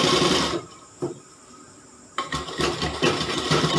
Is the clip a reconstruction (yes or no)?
yes